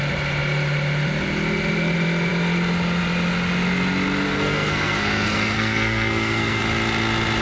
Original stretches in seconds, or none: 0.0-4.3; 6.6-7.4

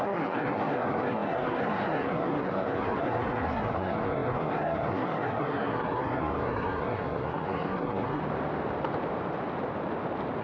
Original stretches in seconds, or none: 8.2-10.4

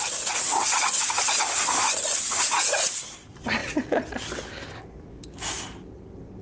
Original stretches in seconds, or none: 0.0-6.4

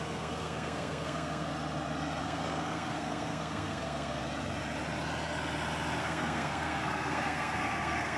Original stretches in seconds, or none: 1.5-2.2; 4.2-6.0

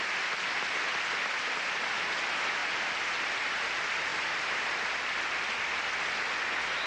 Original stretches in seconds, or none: 0.0-6.9

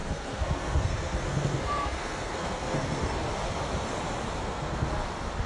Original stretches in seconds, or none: 3.3-4.4; 4.9-5.5